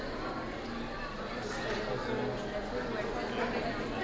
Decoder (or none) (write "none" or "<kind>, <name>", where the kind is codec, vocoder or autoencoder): none